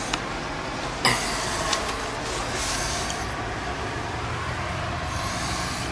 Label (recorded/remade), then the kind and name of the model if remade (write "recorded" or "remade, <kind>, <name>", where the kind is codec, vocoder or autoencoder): recorded